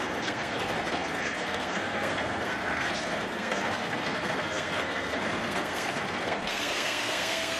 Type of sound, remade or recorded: remade